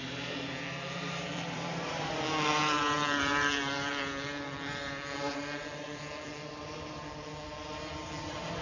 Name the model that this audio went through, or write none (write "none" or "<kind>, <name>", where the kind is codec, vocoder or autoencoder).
vocoder, BigVGAN v2